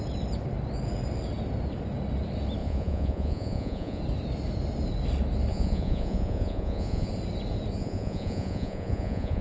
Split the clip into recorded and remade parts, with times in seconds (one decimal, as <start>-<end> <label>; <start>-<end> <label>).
0.0-2.6 recorded; 2.6-4.0 remade; 4.0-5.5 recorded; 5.5-7.1 remade; 7.1-7.8 recorded; 7.8-9.4 remade